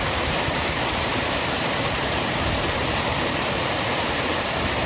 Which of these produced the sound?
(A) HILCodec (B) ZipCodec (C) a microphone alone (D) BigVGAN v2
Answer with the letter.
D